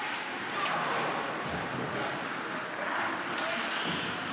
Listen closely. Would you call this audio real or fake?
real